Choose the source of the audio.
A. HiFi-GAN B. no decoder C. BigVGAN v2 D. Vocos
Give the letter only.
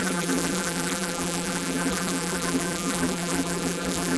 C